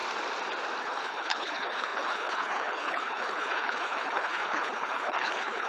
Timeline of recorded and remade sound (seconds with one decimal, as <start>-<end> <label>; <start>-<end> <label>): 0.0-0.8 recorded; 0.8-5.7 remade